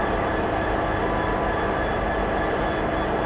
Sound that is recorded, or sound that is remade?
recorded